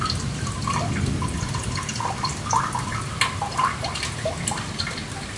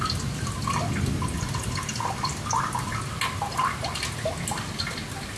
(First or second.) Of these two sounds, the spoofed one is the first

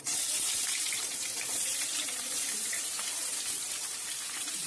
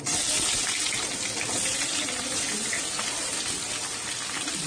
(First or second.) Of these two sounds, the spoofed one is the first